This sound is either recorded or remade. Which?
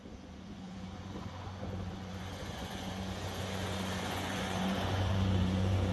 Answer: remade